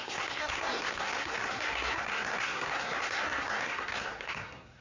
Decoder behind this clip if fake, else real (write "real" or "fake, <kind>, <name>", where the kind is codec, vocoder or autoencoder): fake, codec, SNAC